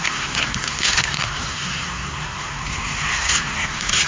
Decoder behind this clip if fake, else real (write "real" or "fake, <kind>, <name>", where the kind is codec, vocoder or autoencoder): fake, codec, SNAC